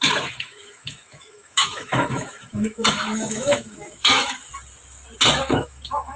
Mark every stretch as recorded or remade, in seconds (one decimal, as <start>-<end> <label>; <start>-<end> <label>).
0.0-4.5 remade; 4.5-5.4 recorded; 5.4-6.2 remade